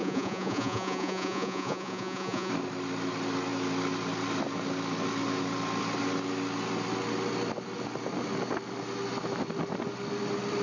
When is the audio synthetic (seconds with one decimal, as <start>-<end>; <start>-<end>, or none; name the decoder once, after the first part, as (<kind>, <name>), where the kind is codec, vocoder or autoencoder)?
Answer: 0.0-2.5 (vocoder, Vocos)